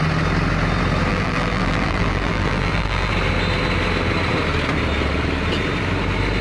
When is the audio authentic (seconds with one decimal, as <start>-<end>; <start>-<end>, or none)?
0.0-1.1; 3.1-6.4